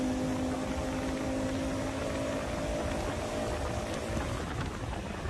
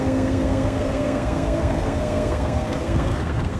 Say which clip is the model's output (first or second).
second